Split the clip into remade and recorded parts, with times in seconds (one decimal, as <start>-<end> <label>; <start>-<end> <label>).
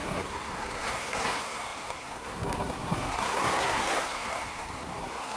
0.0-5.4 remade